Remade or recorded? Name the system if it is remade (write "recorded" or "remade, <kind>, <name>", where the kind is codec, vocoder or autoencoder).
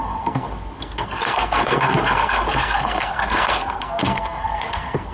remade, codec, SNAC